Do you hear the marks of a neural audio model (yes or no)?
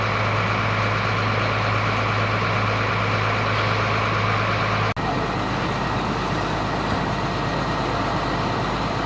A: no